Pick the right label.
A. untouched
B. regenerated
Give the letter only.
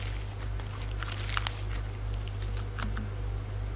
A